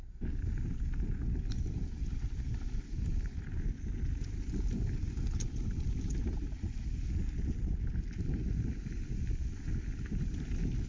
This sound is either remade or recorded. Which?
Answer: recorded